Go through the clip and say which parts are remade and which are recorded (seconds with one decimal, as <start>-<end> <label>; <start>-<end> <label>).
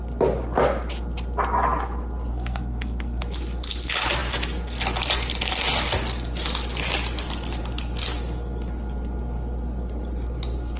0.0-2.3 recorded; 2.3-3.2 remade; 3.2-10.8 recorded